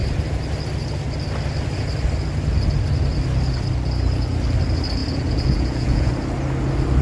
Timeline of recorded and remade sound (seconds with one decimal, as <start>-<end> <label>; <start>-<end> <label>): 0.0-5.0 recorded; 5.0-6.1 remade; 6.1-7.0 recorded

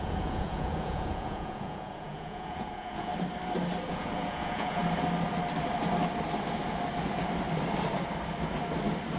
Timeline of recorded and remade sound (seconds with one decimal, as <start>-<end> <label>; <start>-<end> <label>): 0.0-3.1 remade; 3.1-3.9 recorded; 3.9-4.8 remade; 4.8-9.2 recorded